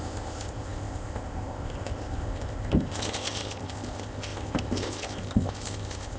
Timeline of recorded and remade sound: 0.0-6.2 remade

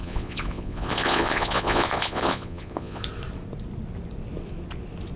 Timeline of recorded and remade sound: 0.0-3.0 remade; 3.0-5.2 recorded

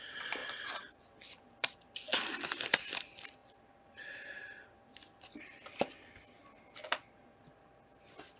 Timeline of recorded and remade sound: 0.0-8.4 recorded

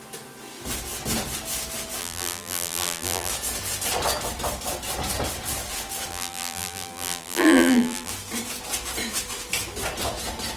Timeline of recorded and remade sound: 0.0-2.0 recorded; 2.0-3.3 remade; 3.3-6.1 recorded; 6.1-8.1 remade; 8.1-10.6 recorded

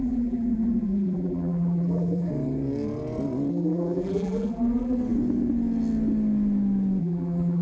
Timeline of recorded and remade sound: 0.0-2.3 remade; 2.3-3.5 recorded; 3.5-5.0 remade; 5.0-7.0 recorded; 7.0-7.6 remade